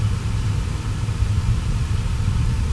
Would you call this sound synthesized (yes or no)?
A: no